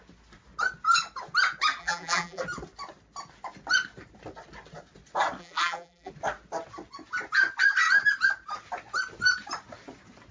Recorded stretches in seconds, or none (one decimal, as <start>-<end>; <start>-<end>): 0.0-1.8; 2.4-5.4; 6.1-10.3